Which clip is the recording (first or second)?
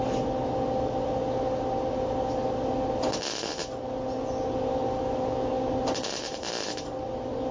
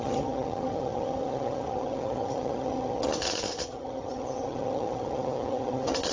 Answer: first